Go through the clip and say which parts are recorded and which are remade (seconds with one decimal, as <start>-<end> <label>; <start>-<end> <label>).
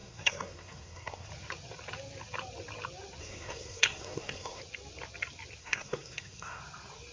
0.0-1.3 remade; 1.3-3.2 recorded; 3.2-4.6 remade; 4.6-5.6 recorded; 5.6-6.6 remade; 6.6-7.1 recorded